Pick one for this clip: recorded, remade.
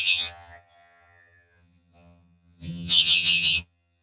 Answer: remade